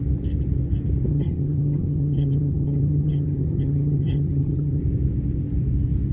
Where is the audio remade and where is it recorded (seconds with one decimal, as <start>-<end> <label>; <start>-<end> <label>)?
0.0-1.1 recorded; 1.1-4.8 remade; 4.8-6.1 recorded